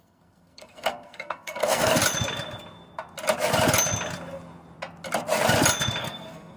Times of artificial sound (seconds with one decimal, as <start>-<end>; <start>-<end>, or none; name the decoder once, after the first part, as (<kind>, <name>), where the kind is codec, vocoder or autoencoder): 0.0-2.0 (codec, SNAC); 6.0-6.6